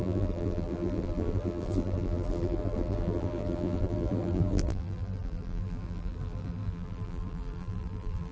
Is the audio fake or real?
fake